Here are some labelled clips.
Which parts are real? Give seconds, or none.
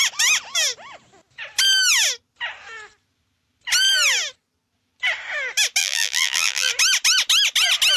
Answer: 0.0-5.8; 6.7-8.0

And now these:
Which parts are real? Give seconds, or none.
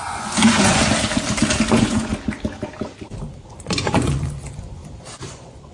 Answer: 0.8-1.7; 2.1-3.5; 4.8-5.3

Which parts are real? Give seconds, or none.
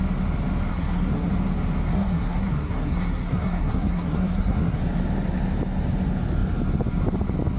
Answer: 0.0-0.7; 1.3-1.9; 4.8-7.6